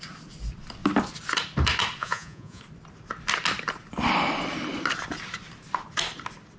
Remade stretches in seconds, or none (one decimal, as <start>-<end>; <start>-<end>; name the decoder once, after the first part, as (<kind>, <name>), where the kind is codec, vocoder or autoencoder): 2.0-2.6 (vocoder, Vocos)